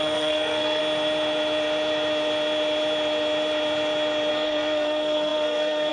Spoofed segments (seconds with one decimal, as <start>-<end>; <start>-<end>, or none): 0.0-0.8; 4.3-5.9